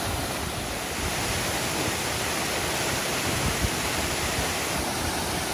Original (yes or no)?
yes